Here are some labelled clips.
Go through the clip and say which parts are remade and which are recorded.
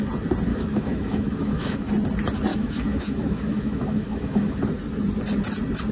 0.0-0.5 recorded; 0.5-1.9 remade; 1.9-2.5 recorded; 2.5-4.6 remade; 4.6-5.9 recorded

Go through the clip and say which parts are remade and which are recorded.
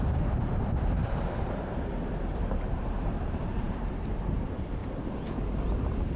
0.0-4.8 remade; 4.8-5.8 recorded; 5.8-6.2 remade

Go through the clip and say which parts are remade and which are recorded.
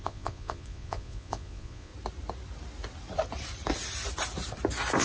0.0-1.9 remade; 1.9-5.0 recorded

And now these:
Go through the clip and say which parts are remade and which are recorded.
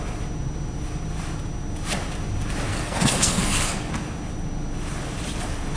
0.0-2.7 recorded; 2.7-3.9 remade; 3.9-5.8 recorded